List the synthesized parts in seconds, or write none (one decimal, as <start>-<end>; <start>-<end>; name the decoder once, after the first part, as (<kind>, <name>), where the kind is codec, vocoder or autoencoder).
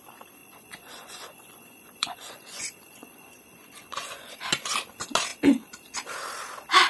0.4-4.3 (vocoder, Vocos)